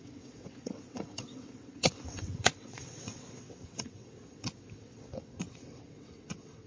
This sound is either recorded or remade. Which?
remade